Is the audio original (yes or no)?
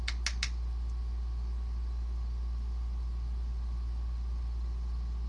yes